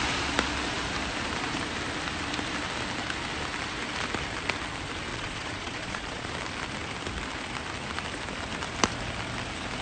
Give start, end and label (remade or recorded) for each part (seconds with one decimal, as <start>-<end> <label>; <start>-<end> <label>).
0.0-5.1 recorded; 5.1-6.3 remade; 6.3-9.8 recorded